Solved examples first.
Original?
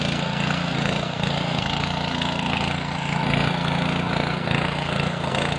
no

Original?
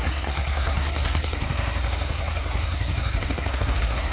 no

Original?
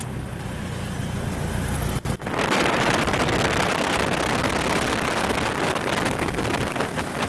yes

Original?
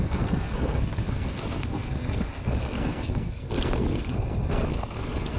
no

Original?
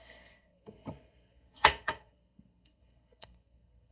no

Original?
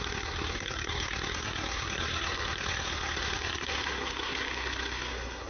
no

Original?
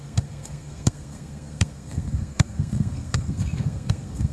no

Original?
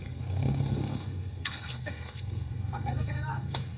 no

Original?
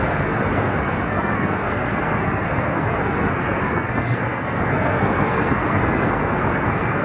no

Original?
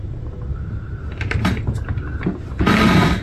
yes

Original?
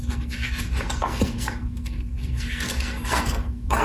no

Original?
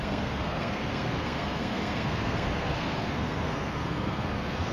no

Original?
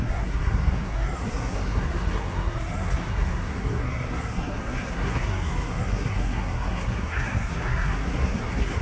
no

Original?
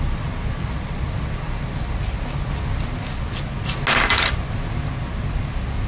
yes